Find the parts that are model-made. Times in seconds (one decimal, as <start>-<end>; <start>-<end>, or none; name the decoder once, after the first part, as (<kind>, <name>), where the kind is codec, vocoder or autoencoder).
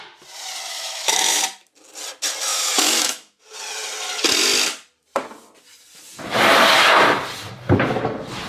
0.7-1.4 (autoencoder, DAC-VAE); 2.5-3.4